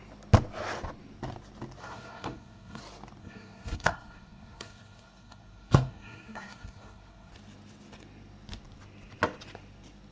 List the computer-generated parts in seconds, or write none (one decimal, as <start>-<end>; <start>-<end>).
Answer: 1.8-2.8; 3.2-7.3